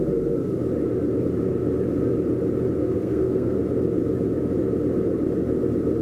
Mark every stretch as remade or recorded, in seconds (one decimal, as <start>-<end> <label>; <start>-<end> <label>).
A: 0.0-2.8 recorded; 2.8-3.6 remade; 3.6-6.0 recorded